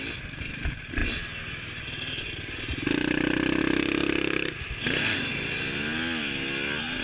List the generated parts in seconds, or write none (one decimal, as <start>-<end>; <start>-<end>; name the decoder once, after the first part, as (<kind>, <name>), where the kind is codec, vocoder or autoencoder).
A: none